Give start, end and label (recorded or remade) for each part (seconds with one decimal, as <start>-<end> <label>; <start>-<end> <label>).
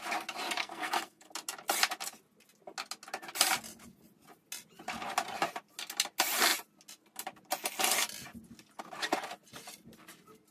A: 0.0-0.6 recorded; 0.6-1.3 remade; 1.3-10.5 recorded